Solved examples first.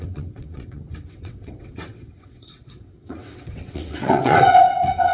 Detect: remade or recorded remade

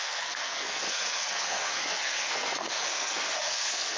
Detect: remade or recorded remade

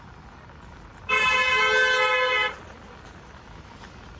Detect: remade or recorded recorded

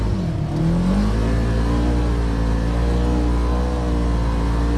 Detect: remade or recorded recorded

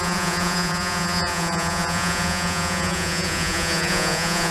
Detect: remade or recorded remade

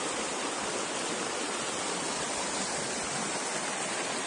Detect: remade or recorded recorded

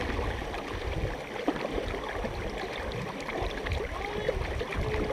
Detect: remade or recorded recorded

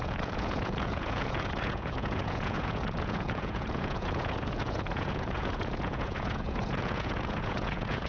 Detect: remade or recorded remade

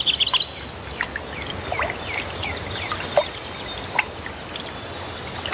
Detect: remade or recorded recorded